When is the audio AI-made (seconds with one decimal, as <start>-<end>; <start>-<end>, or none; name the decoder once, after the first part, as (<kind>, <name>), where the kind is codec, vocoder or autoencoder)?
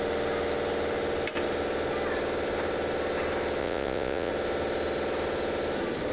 3.6-4.3 (vocoder, Vocos)